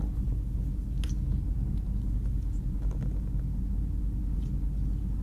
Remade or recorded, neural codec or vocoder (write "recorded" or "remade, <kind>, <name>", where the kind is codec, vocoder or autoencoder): recorded